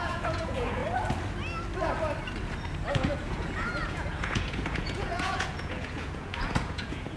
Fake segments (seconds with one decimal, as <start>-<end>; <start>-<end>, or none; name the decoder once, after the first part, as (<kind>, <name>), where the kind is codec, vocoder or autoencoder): 0.0-0.8 (vocoder, Vocos); 2.9-7.2